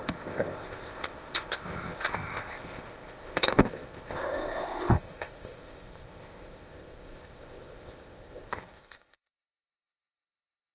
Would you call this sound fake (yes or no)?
yes